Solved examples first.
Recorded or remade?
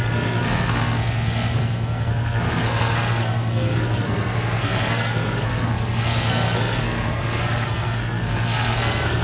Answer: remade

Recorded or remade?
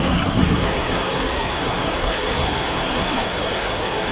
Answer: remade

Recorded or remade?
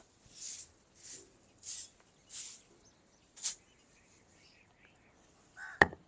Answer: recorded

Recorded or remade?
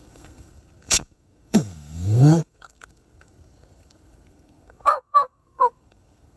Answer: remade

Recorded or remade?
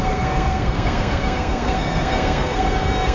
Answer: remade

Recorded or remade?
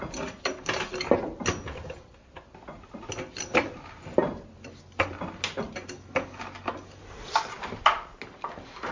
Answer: recorded